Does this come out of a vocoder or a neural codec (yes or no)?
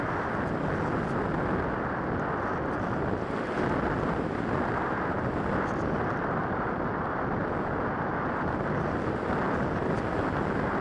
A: no